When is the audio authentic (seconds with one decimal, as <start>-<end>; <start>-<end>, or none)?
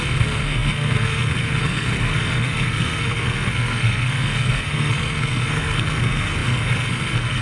none